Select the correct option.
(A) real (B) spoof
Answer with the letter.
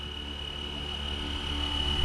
A